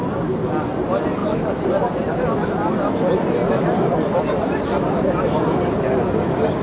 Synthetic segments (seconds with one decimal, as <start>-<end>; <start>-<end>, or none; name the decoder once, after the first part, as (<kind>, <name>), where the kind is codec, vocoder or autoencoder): none